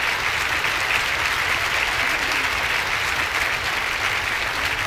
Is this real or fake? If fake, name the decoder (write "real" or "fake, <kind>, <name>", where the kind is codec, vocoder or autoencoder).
real